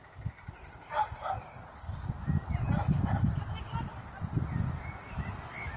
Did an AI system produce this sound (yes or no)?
no